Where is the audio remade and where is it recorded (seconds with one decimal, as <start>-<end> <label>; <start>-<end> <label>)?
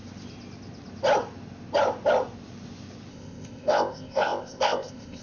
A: 0.0-3.1 recorded; 3.1-5.2 remade